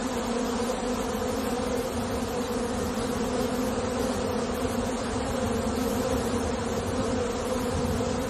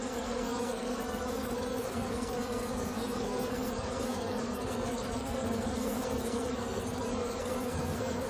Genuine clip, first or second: first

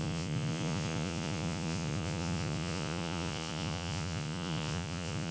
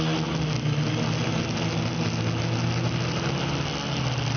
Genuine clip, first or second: second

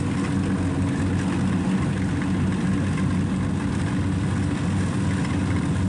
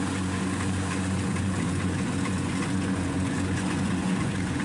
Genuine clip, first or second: first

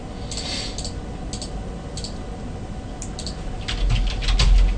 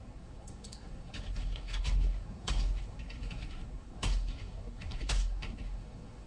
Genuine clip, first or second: first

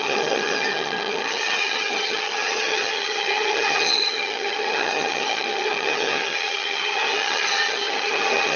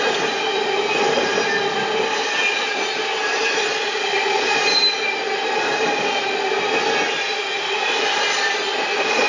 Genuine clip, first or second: second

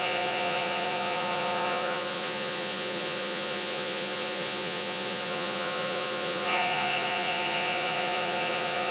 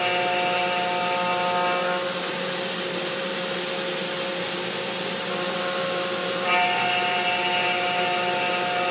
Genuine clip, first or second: second